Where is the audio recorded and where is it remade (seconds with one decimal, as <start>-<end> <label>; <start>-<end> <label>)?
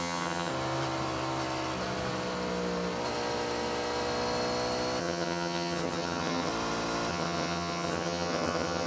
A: 0.0-0.5 remade; 0.5-5.0 recorded; 5.0-6.5 remade; 6.5-7.1 recorded; 7.1-8.9 remade